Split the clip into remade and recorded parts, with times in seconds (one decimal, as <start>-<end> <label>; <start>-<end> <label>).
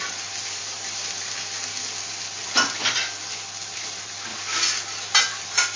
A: 0.0-1.7 remade; 1.7-3.7 recorded; 3.7-4.3 remade; 4.3-5.2 recorded; 5.2-5.8 remade